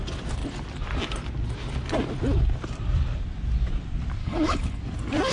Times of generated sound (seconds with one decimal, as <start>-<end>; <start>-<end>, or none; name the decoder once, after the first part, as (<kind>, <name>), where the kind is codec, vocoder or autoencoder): 4.2-4.8 (codec, HILCodec)